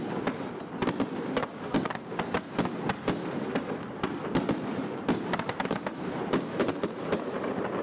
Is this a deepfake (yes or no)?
no